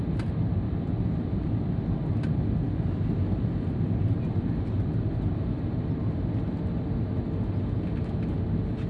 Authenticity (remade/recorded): recorded